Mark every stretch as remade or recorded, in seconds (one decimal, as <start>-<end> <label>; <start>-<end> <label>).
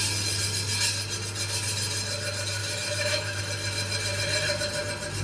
0.0-2.6 recorded; 2.6-3.4 remade; 3.4-5.2 recorded